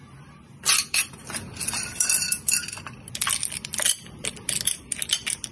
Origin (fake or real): real